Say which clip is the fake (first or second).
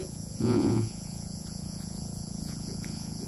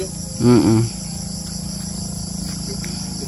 first